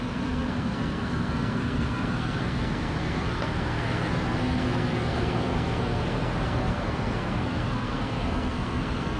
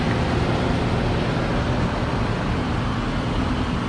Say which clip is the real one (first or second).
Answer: second